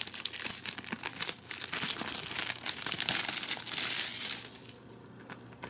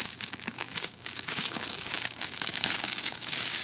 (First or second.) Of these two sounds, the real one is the first